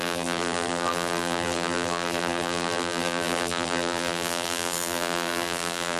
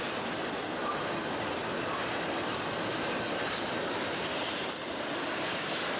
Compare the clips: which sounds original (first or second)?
second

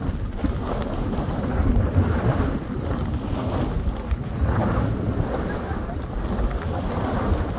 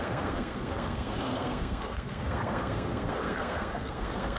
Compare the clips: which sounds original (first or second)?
first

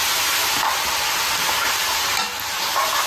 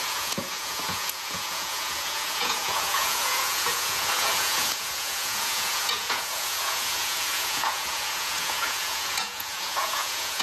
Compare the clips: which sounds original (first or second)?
first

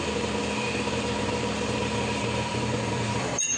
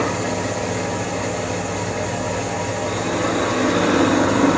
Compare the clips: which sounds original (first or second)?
second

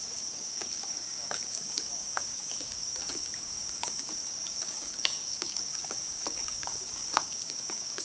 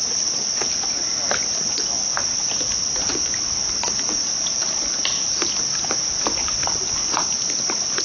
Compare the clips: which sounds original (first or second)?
second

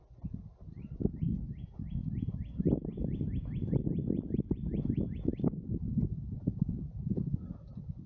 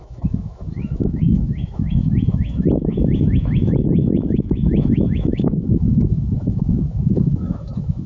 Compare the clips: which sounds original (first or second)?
first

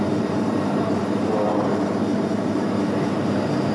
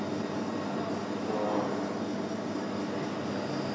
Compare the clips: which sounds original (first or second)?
second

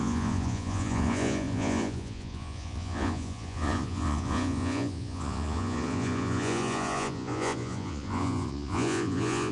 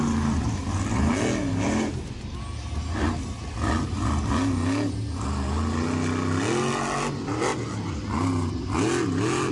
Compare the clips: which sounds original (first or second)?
second